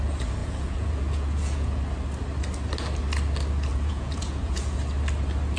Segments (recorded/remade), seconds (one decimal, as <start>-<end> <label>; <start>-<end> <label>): 0.0-0.4 recorded; 0.4-1.8 remade; 1.8-3.7 recorded; 3.7-4.8 remade; 4.8-5.6 recorded